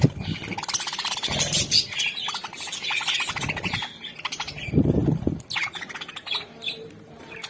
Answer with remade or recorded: recorded